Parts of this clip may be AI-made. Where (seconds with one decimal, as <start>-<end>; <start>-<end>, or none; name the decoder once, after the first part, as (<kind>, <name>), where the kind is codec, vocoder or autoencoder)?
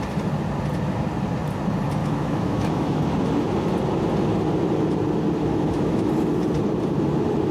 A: 2.0-3.0 (autoencoder, DAC-VAE); 5.5-6.1